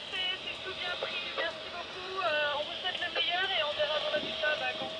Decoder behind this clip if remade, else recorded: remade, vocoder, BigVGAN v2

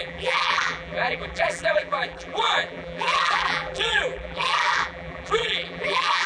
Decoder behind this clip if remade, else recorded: remade, vocoder, BigVGAN v2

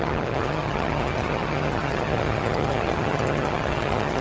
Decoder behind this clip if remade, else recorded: remade, vocoder, HiFi-GAN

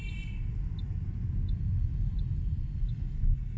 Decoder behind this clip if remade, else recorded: recorded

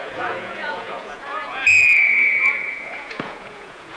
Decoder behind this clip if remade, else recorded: remade, vocoder, Vocos